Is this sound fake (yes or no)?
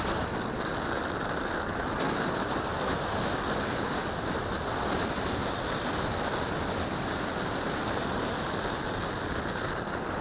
no